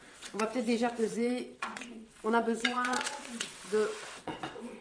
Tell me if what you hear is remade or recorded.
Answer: remade